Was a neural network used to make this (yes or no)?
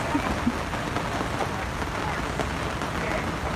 no